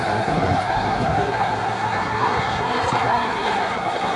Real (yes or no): no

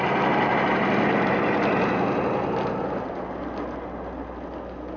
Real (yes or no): yes